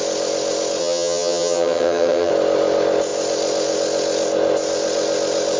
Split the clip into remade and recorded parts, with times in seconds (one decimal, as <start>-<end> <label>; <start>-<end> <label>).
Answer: 0.0-0.8 recorded; 0.8-2.3 remade; 2.3-5.6 recorded